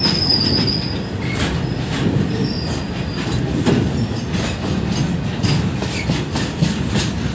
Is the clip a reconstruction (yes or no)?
no